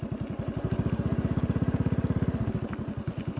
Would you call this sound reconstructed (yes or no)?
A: no